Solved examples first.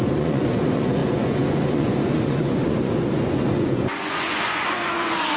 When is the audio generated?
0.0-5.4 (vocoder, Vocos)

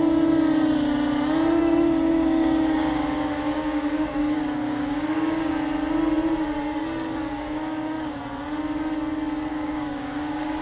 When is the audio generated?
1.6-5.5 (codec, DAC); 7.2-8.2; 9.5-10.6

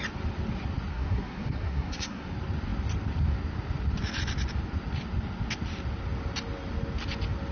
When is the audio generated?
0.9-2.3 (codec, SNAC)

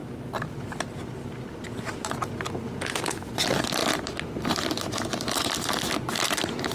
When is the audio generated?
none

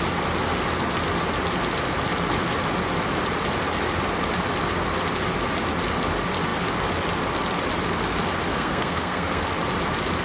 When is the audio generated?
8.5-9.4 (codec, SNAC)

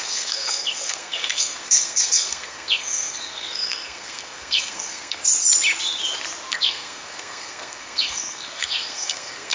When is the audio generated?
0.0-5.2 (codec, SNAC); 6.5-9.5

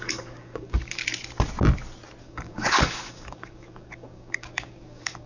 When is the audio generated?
0.0-1.0 (codec, DAC); 2.2-5.3

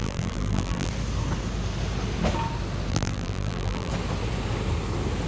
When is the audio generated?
0.0-0.9 (vocoder, BigVGAN v2); 2.9-3.9